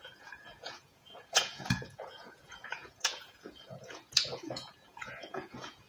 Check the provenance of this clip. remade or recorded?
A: remade